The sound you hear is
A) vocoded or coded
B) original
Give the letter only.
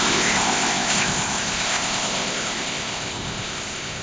A